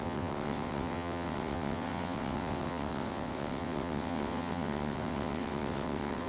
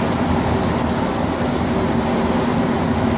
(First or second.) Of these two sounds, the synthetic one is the first